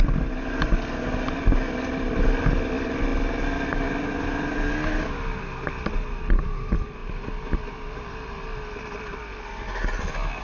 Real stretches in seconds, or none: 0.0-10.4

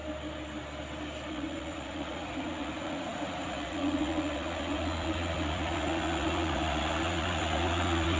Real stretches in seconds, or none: 0.0-1.3

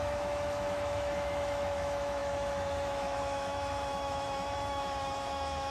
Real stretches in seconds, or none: none

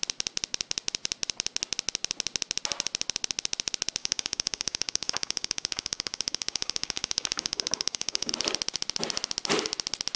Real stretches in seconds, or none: 0.0-4.0; 8.3-10.2

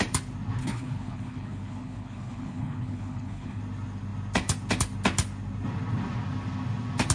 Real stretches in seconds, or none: 0.0-0.6; 3.6-7.1

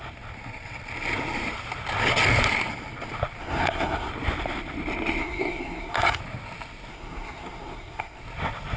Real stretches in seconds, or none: 0.0-3.4; 4.1-5.2; 6.2-6.9; 8.2-8.8

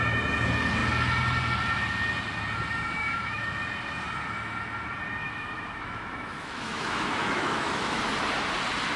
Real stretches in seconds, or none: 0.0-3.0; 3.6-5.2; 8.0-9.0